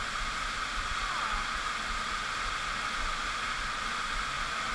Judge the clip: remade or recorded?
recorded